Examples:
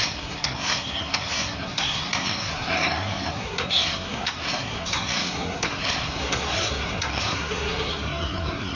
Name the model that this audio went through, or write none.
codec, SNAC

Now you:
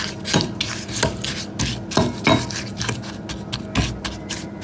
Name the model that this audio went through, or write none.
none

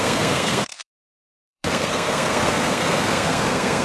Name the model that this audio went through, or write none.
codec, SNAC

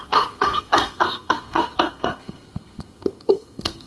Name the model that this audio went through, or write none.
codec, SNAC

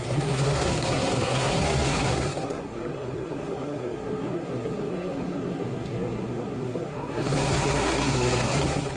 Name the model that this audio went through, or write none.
codec, SNAC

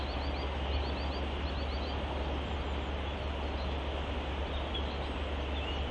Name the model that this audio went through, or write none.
none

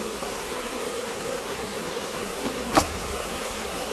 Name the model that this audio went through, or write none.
codec, SNAC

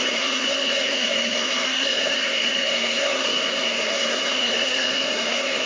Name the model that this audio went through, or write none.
codec, SNAC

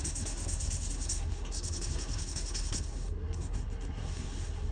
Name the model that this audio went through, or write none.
codec, SNAC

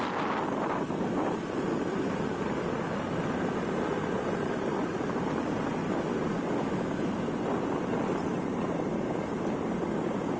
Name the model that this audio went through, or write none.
none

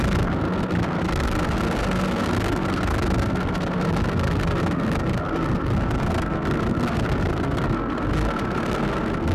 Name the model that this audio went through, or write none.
codec, SNAC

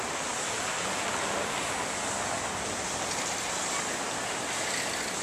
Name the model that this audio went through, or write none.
none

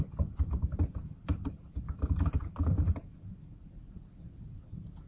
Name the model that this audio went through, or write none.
none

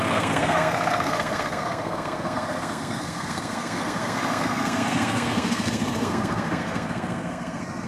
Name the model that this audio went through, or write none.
codec, SNAC